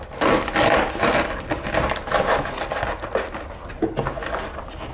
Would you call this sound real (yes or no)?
yes